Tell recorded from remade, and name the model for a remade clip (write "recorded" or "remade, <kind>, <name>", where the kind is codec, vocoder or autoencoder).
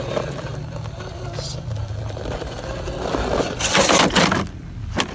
recorded